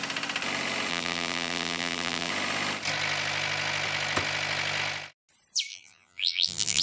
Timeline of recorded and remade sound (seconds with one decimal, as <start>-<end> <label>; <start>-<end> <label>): 0.0-0.9 recorded; 0.9-2.3 remade; 2.3-5.7 recorded; 5.7-6.8 remade